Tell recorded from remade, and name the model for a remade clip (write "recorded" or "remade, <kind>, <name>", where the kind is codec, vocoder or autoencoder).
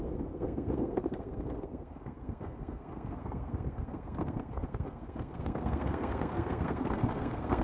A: remade, codec, SNAC